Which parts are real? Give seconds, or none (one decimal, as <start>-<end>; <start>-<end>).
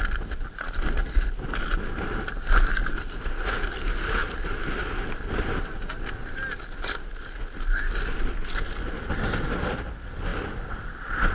0.0-11.3